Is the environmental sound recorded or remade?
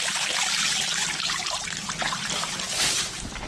remade